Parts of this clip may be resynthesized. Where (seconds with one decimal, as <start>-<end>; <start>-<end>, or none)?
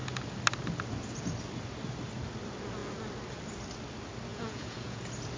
4.3-5.0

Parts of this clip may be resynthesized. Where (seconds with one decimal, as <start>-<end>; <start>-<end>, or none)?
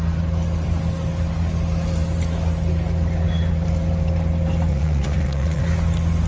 4.7-5.6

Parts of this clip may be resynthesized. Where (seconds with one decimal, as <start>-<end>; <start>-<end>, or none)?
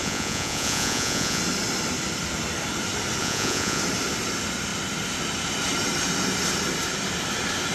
0.0-1.4; 3.2-3.8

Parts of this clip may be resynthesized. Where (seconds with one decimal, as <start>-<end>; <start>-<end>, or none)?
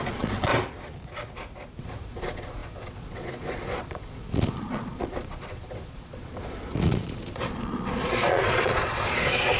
0.0-0.5; 1.8-9.6